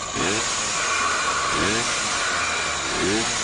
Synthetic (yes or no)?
no